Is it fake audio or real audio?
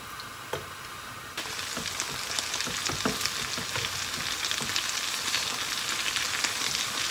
real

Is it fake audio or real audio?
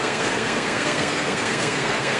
fake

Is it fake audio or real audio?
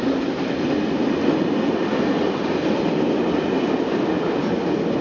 real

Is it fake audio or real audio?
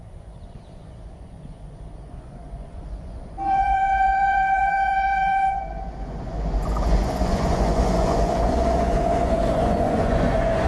fake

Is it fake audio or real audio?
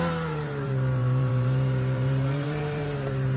fake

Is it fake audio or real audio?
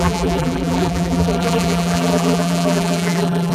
fake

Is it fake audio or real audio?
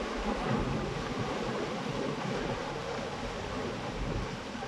real